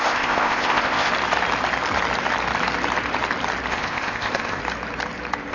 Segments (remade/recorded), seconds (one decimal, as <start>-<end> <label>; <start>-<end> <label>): 0.0-1.1 remade; 1.1-3.7 recorded; 3.7-4.6 remade; 4.6-5.5 recorded